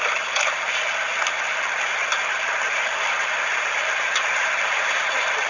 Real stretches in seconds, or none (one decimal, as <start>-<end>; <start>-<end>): 0.0-5.5